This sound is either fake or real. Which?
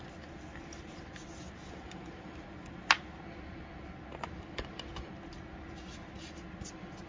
real